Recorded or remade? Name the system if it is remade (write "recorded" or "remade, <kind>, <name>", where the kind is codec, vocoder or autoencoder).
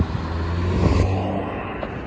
recorded